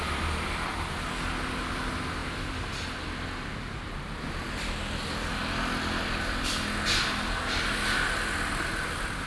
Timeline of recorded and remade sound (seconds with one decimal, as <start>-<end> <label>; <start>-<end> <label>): 0.0-9.3 recorded